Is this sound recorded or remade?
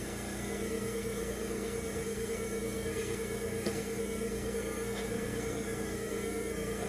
remade